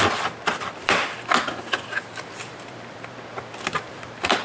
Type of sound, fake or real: fake